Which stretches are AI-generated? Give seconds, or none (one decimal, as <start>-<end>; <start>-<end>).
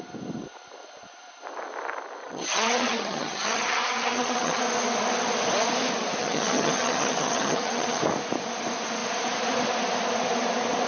2.2-4.6; 6.2-8.0